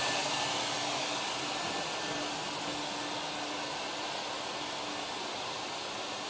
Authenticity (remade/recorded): recorded